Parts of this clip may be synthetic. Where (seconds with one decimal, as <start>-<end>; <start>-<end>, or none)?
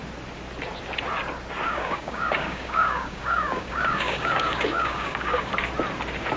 1.7-5.5